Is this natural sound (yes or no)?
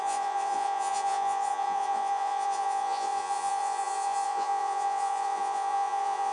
no